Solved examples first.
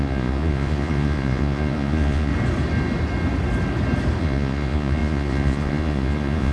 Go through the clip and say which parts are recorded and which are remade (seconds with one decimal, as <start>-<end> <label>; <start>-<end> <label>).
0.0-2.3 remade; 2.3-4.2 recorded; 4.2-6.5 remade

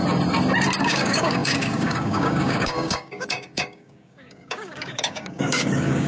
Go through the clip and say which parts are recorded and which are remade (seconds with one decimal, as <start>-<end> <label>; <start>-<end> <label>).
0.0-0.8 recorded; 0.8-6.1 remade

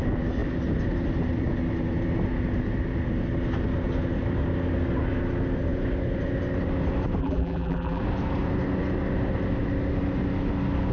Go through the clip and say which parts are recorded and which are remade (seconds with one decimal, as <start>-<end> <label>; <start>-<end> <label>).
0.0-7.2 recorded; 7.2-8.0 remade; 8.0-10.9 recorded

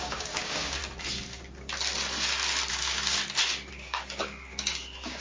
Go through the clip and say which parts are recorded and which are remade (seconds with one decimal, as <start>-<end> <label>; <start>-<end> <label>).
0.0-0.8 remade; 0.8-2.7 recorded; 2.7-3.2 remade; 3.2-3.7 recorded; 3.7-5.2 remade